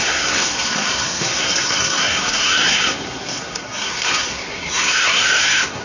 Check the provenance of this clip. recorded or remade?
remade